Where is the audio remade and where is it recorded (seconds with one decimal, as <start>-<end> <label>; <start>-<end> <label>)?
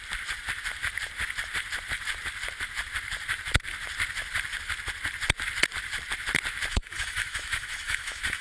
0.0-6.7 recorded; 6.7-8.4 remade